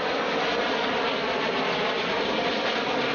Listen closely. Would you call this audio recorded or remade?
recorded